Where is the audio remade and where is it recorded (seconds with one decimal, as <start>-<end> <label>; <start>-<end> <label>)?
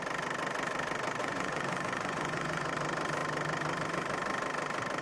0.0-1.2 recorded; 1.2-2.7 remade; 2.7-5.0 recorded